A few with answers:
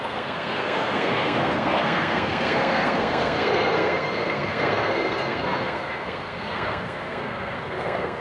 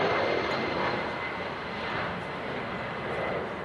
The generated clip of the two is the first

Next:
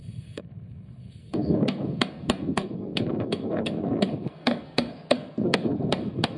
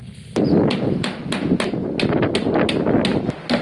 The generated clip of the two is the first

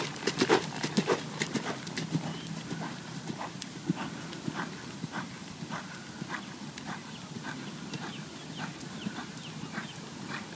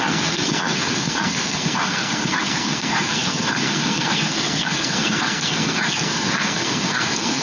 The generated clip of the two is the second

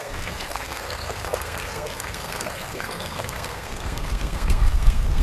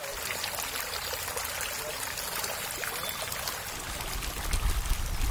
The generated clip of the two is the first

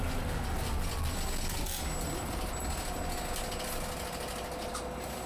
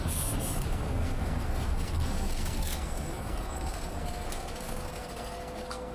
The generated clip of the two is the second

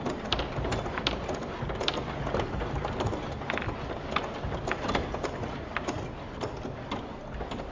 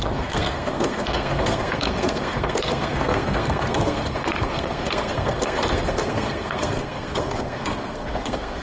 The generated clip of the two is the second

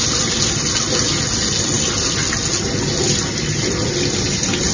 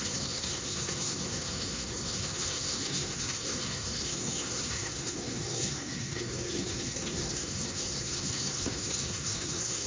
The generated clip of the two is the second